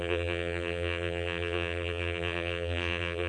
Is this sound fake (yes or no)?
yes